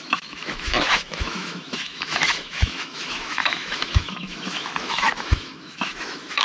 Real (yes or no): no